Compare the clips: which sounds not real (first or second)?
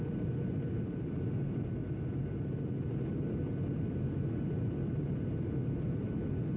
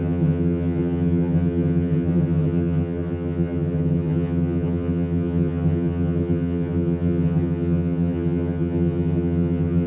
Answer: second